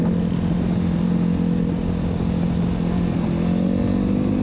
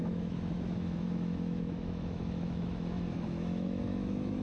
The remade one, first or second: second